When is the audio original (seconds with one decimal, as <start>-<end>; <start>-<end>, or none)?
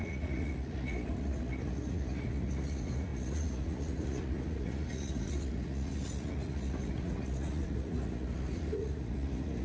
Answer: none